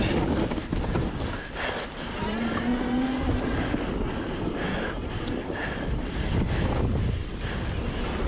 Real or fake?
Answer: real